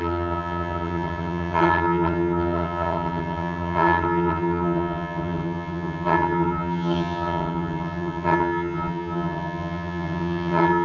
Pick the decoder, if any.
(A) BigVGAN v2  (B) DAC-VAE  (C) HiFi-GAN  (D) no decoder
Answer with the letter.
C